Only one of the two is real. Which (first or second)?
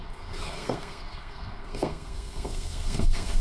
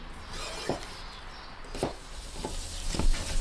second